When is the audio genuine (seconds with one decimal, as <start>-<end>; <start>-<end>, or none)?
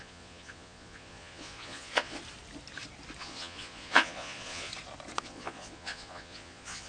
2.2-3.2; 4.7-5.2